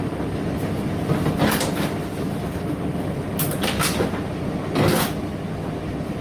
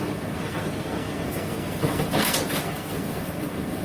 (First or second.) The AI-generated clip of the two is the second